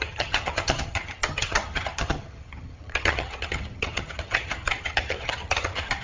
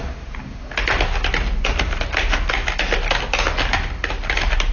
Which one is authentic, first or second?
second